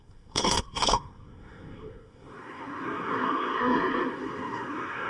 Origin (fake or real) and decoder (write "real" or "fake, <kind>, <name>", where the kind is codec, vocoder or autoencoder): fake, codec, SNAC